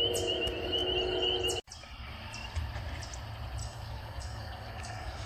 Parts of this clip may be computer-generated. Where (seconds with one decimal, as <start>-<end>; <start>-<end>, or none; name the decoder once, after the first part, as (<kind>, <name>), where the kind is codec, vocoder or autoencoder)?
3.6-5.3 (codec, DAC)